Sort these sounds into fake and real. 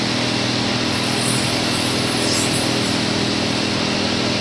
real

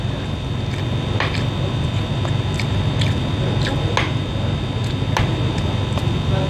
real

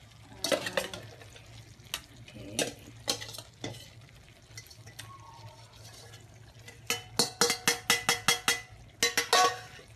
real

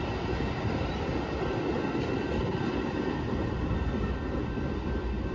real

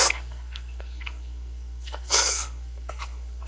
fake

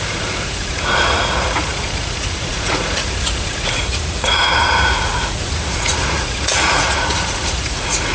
fake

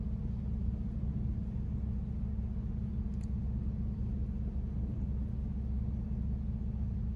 real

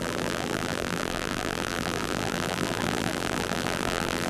fake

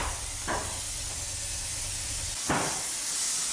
real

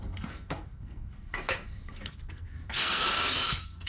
fake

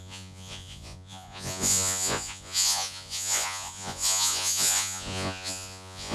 fake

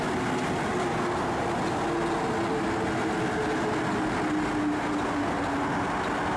real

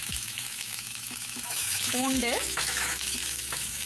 fake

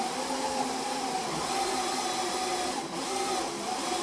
real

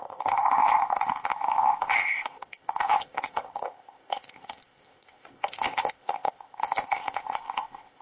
fake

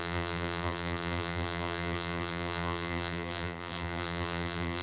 fake